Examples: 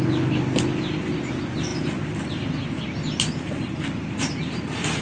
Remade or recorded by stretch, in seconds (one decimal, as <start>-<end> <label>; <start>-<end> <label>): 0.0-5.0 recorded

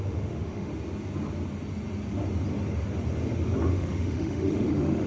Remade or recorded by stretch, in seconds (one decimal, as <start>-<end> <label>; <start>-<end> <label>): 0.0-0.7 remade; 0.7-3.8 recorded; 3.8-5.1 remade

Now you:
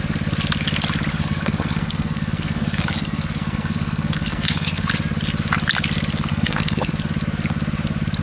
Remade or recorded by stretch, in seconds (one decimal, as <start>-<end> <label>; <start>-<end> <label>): 0.0-1.1 recorded; 1.1-4.9 remade; 4.9-6.3 recorded; 6.3-6.9 remade; 6.9-8.2 recorded

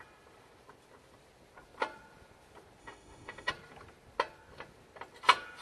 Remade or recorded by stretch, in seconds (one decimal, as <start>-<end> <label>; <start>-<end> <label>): 0.0-2.8 recorded; 2.8-3.5 remade; 3.5-5.6 recorded

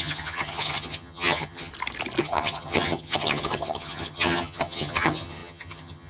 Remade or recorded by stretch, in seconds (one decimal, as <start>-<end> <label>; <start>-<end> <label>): 0.0-1.7 remade; 1.7-2.2 recorded; 2.2-6.1 remade

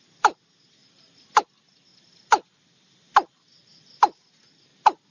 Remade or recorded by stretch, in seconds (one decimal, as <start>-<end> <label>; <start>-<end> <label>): 0.0-0.8 recorded; 0.8-1.4 remade; 1.4-1.9 recorded; 1.9-4.3 remade; 4.3-5.1 recorded

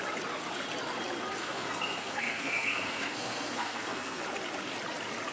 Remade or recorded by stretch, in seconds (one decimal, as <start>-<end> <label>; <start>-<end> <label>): 0.0-1.4 recorded; 1.4-4.2 remade; 4.2-5.3 recorded

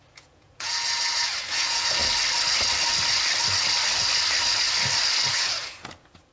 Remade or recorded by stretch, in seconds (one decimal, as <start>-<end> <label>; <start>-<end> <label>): 0.0-2.0 remade; 2.0-5.3 recorded; 5.3-6.3 remade